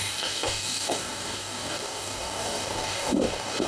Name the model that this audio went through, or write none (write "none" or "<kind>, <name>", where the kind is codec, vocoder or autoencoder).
codec, DAC